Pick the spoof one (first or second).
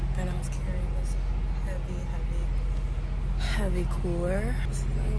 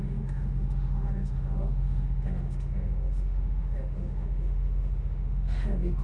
second